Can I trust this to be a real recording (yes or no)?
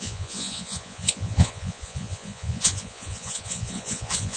no